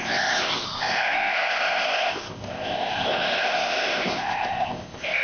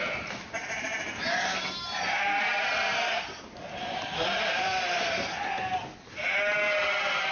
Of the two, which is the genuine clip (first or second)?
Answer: second